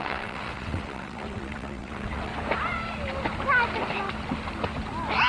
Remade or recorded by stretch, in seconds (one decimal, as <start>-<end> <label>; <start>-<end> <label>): 0.0-2.3 remade; 2.3-5.3 recorded